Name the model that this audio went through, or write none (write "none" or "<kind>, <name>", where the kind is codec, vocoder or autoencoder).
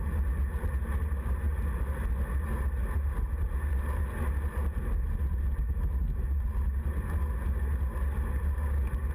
none